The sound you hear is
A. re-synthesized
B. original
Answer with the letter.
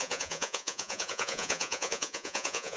A